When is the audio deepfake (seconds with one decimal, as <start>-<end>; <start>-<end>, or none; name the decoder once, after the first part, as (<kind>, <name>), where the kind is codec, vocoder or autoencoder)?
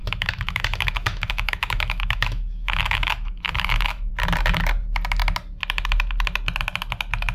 0.0-4.1 (autoencoder, DAC-VAE)